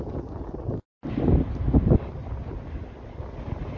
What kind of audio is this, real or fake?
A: real